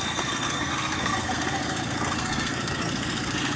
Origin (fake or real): fake